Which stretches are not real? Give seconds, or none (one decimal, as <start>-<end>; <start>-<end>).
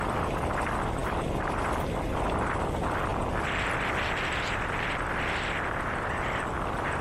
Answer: none